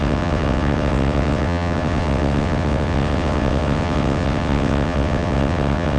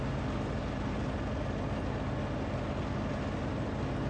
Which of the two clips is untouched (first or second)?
second